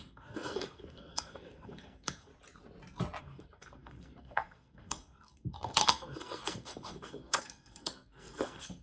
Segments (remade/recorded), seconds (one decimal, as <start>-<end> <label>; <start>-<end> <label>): 0.0-2.3 remade; 2.3-3.2 recorded; 3.2-8.8 remade